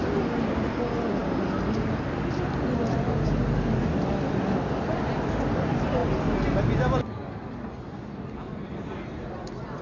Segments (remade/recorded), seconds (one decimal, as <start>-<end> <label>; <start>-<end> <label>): 0.0-9.8 recorded